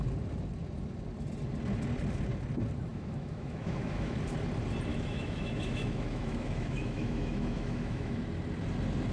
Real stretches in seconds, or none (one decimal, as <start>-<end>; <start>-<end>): 0.0-2.9; 4.2-4.9; 8.2-9.1